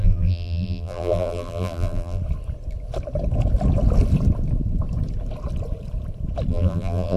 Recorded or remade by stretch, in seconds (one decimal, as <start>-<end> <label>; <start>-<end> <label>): 0.0-2.2 remade; 2.2-6.5 recorded; 6.5-7.2 remade